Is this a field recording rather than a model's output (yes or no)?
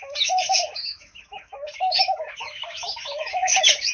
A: no